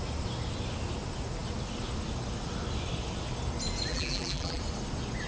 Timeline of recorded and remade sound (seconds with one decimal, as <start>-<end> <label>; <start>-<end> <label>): 0.0-3.9 recorded; 3.9-4.6 remade; 4.6-5.3 recorded